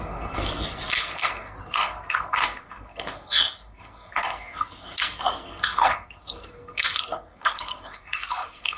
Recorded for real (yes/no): no